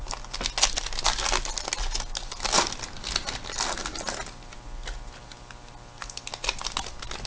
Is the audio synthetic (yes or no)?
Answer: no